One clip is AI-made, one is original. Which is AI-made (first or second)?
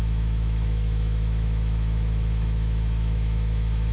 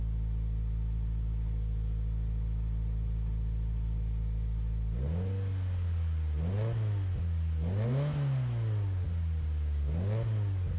first